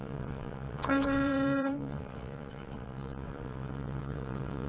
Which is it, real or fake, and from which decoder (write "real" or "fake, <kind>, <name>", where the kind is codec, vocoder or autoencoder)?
fake, vocoder, WaveNeXt